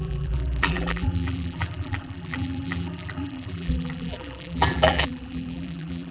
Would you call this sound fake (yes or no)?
yes